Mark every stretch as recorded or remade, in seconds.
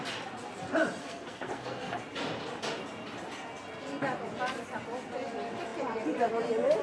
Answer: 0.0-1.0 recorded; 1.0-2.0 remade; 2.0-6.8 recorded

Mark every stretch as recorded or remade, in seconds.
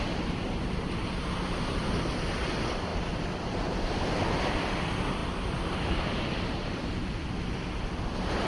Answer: 0.0-8.5 recorded